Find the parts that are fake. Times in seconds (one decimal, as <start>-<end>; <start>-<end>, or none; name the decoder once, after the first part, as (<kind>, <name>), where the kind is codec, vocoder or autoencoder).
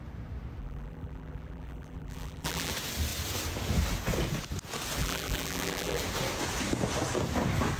0.6-2.7 (vocoder, BigVGAN v2); 5.0-6.0